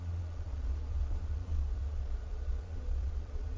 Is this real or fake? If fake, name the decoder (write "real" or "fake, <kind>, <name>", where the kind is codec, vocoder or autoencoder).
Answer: fake, vocoder, Vocos